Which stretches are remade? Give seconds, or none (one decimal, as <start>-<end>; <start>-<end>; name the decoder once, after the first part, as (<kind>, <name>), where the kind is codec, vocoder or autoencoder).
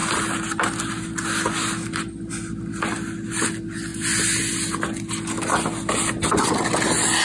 none